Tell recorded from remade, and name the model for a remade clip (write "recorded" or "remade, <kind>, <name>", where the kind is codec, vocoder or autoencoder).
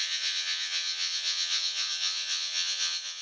remade, vocoder, Vocos